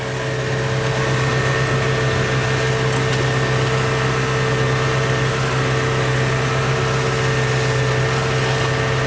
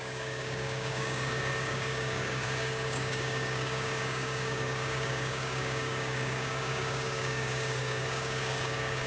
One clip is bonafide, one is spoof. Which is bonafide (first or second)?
first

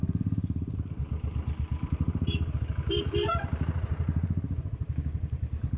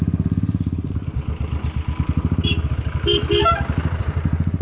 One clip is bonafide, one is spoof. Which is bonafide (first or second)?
second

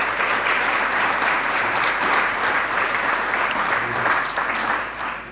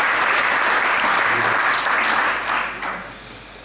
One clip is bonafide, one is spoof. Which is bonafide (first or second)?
second